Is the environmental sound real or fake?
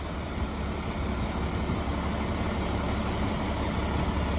real